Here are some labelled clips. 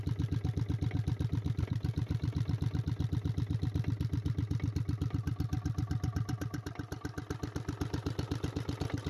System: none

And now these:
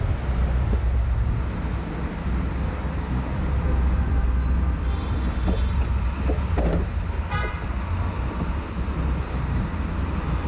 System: none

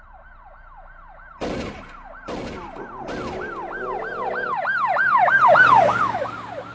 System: none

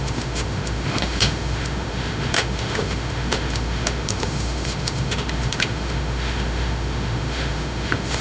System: autoencoder, DAC-VAE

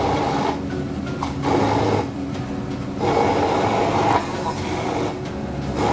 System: none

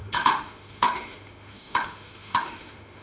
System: autoencoder, DAC-VAE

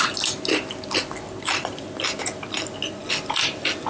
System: none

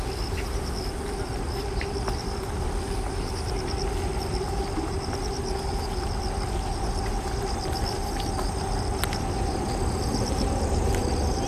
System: none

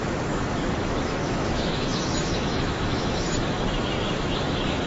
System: autoencoder, DAC-VAE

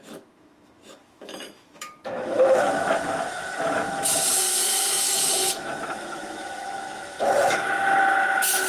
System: autoencoder, DAC-VAE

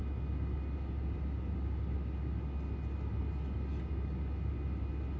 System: none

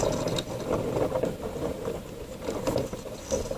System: none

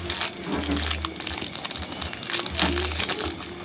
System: none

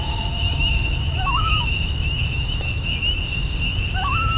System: autoencoder, DAC-VAE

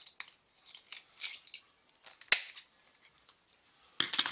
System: none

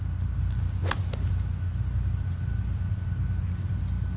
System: none